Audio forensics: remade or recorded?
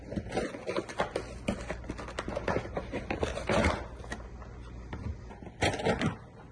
recorded